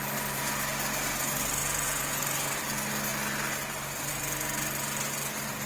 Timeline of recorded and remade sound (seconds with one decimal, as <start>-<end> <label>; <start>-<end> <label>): 0.0-1.6 recorded; 1.6-2.2 remade; 2.2-5.7 recorded